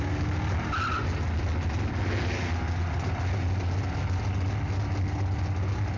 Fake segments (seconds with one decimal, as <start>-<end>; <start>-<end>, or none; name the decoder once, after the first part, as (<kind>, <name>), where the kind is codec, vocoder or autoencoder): none